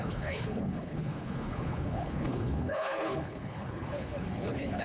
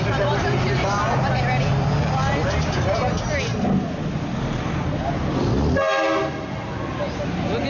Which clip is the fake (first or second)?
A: first